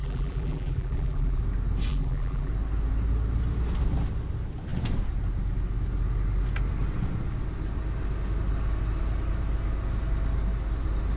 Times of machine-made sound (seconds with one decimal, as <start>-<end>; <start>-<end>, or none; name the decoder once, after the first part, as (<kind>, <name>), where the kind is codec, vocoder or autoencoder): 0.0-1.4 (vocoder, BigVGAN v2); 1.9-2.5